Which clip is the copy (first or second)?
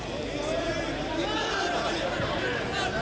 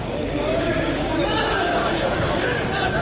second